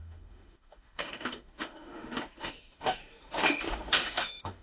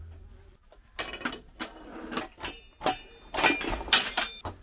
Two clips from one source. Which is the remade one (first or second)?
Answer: first